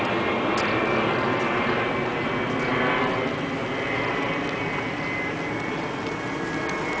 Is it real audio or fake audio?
real